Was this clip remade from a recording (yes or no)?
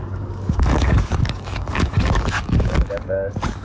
yes